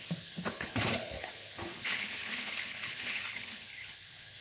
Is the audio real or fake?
fake